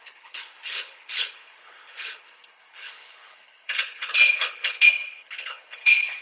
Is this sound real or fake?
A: fake